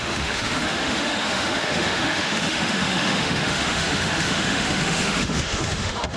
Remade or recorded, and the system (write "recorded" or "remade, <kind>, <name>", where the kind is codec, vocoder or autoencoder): remade, autoencoder, DAC-VAE